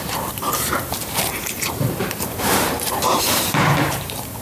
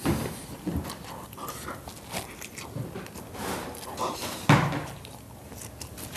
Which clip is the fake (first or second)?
first